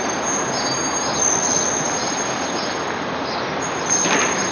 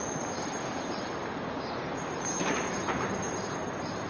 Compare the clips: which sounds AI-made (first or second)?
second